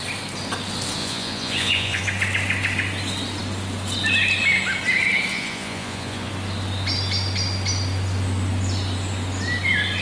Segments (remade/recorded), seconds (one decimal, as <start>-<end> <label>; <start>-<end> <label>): 0.0-1.0 recorded; 1.0-2.0 remade; 2.0-5.3 recorded; 5.3-6.3 remade; 6.3-10.0 recorded